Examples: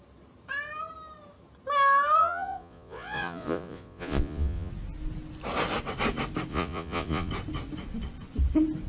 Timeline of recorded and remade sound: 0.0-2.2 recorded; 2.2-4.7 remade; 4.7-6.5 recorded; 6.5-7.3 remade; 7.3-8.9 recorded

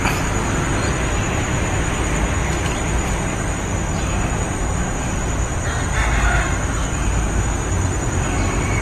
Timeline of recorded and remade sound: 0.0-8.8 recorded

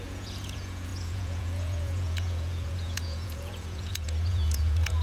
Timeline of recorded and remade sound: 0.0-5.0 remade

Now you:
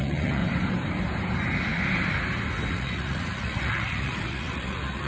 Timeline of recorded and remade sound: 0.0-0.4 remade; 0.4-2.7 recorded; 2.7-5.1 remade

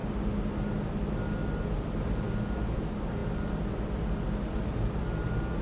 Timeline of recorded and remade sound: 0.0-5.6 recorded

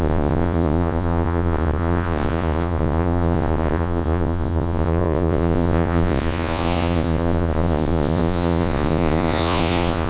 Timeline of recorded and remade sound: 0.0-10.1 remade